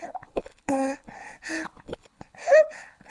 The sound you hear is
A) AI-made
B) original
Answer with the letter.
A